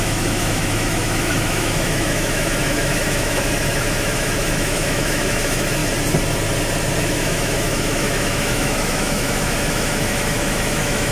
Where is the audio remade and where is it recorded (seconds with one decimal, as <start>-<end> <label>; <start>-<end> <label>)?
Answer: 0.0-5.8 remade; 5.8-7.0 recorded; 7.0-11.1 remade